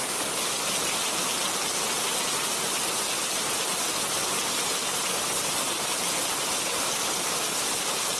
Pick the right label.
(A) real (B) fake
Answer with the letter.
A